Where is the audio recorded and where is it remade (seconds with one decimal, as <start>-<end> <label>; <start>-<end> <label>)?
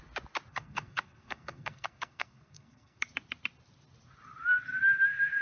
0.0-0.5 recorded; 0.5-3.0 remade; 3.0-5.4 recorded